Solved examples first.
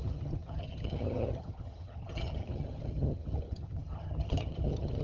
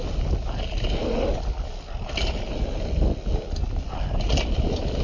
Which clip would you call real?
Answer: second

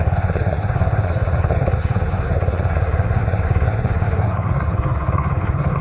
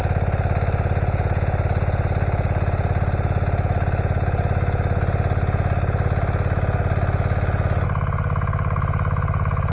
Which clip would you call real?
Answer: second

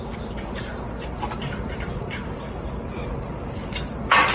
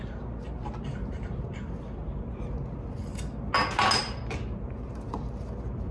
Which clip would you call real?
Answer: second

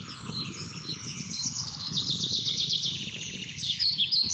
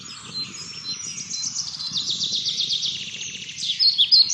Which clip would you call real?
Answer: second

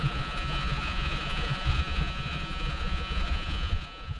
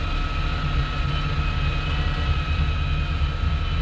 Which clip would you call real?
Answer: second